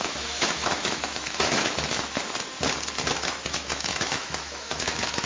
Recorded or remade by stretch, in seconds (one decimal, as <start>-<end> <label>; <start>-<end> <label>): 0.0-2.2 remade; 2.2-3.1 recorded; 3.1-5.3 remade